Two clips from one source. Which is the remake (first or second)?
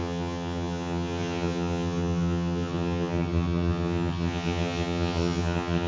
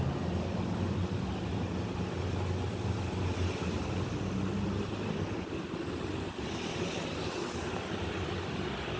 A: first